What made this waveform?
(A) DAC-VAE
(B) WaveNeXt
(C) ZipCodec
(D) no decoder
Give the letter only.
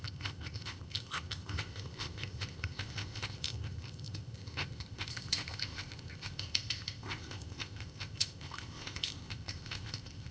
C